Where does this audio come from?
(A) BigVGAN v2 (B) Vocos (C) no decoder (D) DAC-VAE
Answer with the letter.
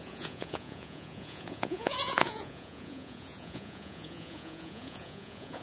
B